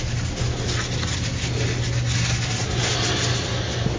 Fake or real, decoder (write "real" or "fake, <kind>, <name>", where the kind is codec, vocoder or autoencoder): real